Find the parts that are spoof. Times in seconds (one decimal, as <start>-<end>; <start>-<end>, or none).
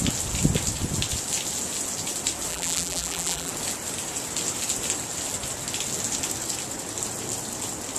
2.5-3.5